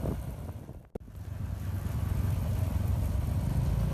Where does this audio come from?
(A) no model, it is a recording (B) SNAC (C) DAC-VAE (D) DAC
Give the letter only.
A